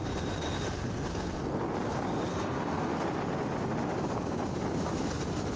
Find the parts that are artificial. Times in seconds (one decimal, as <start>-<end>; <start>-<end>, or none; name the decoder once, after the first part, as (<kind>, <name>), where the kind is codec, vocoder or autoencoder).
1.1-1.6 (codec, SNAC); 2.3-2.9